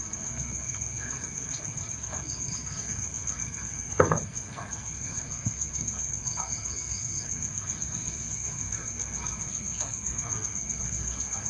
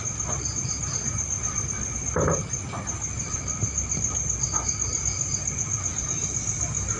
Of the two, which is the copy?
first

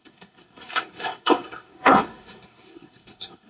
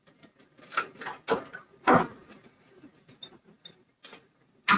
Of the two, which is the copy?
first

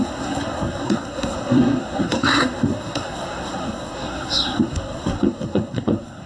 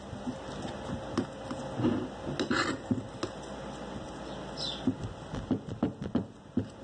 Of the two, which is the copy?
first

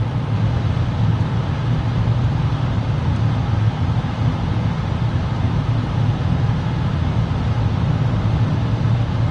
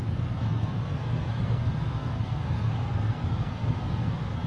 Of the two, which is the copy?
second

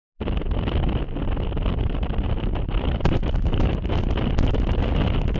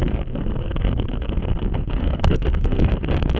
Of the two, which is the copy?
second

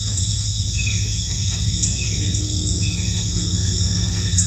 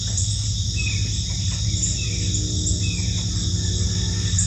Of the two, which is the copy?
first